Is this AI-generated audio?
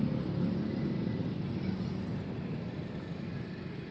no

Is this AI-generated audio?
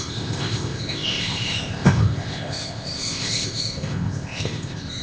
yes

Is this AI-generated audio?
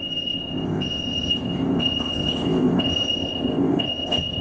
yes